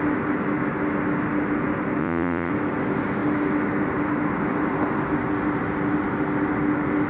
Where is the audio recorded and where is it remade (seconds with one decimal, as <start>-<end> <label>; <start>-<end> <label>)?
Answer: 0.0-2.0 recorded; 2.0-2.5 remade; 2.5-7.1 recorded